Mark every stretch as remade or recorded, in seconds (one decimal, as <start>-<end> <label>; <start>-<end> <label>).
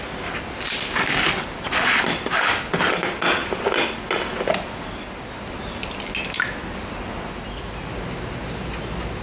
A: 0.0-9.2 recorded